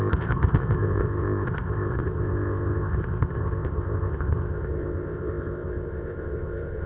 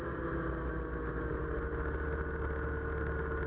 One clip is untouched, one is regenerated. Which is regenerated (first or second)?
first